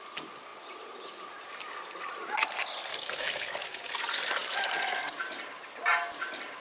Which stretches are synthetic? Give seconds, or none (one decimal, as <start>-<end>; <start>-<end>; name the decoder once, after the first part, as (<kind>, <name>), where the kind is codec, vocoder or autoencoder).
2.9-3.9 (codec, DAC)